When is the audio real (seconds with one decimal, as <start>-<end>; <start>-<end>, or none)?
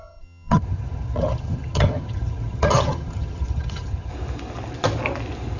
4.1-5.6